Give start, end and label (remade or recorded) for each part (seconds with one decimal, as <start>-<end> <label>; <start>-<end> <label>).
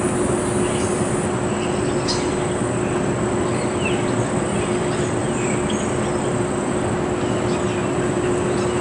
0.0-8.8 recorded